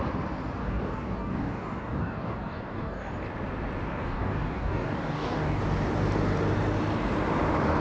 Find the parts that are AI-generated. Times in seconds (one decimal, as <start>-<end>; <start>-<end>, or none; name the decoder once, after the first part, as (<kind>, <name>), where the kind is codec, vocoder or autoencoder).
0.6-3.1 (codec, DAC); 3.9-5.6